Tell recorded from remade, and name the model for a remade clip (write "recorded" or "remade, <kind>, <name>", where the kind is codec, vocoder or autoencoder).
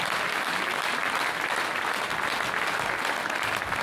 recorded